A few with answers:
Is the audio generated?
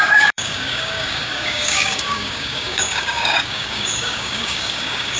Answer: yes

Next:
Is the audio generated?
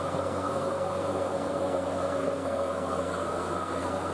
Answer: yes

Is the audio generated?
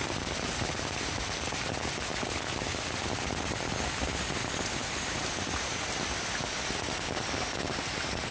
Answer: no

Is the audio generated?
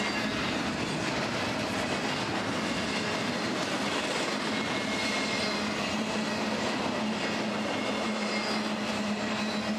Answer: no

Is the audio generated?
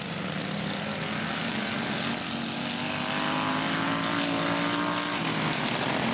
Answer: no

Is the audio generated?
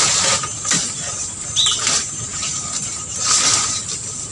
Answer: yes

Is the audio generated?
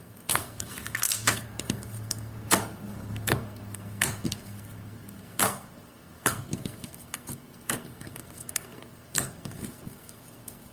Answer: yes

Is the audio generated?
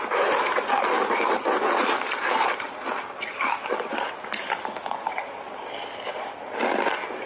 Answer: no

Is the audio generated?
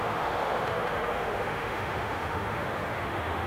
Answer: yes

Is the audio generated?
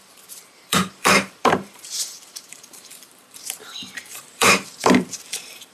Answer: yes